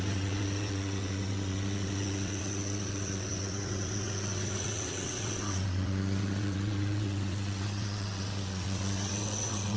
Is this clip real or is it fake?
fake